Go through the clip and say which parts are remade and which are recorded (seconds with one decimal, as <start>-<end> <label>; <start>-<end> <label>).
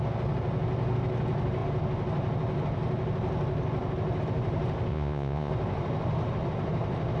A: 0.0-4.9 recorded; 4.9-5.5 remade; 5.5-7.2 recorded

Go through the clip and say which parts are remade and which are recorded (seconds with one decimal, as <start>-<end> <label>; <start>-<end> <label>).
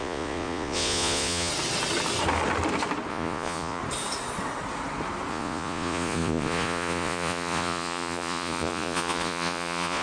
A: 0.0-1.5 remade; 1.5-3.1 recorded; 3.1-3.8 remade; 3.8-5.3 recorded; 5.3-10.0 remade